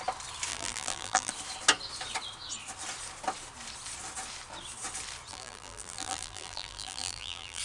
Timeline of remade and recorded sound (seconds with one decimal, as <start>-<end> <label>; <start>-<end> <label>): 0.0-0.5 recorded; 0.5-1.3 remade; 1.3-5.3 recorded; 5.3-7.6 remade